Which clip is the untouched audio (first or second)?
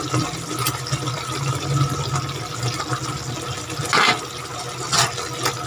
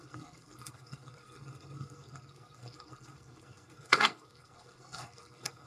first